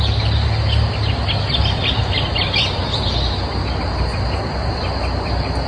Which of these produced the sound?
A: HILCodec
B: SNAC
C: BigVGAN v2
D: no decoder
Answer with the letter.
D